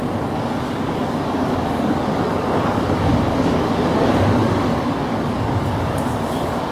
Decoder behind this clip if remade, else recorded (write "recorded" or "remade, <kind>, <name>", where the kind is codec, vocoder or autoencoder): remade, codec, DAC